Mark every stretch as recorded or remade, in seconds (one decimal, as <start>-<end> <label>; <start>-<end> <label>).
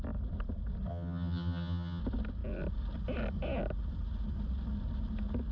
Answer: 0.0-0.9 recorded; 0.9-2.0 remade; 2.0-5.5 recorded